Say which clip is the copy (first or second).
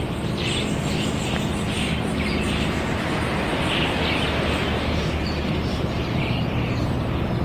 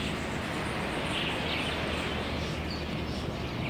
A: first